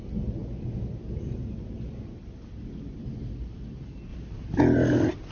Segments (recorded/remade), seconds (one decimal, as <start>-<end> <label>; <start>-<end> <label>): 0.0-5.3 recorded